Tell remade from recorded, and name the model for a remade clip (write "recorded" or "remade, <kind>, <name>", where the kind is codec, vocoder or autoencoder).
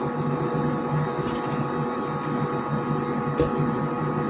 recorded